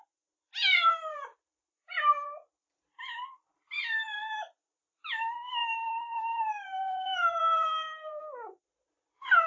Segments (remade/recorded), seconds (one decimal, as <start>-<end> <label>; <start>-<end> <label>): 0.0-0.6 recorded; 0.6-3.1 remade; 3.1-3.8 recorded; 3.8-5.0 remade; 5.0-5.6 recorded; 5.6-8.2 remade; 8.2-9.5 recorded